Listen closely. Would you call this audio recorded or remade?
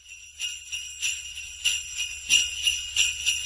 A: recorded